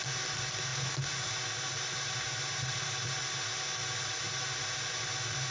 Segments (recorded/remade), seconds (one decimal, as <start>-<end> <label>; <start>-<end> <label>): 0.0-5.5 recorded